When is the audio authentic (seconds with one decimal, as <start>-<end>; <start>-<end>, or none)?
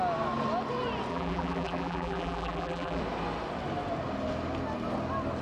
0.0-1.1; 3.0-5.4